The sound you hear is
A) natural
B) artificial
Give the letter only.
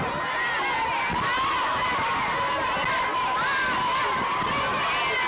A